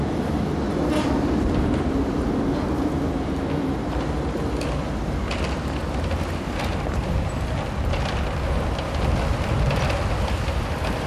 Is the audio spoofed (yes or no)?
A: no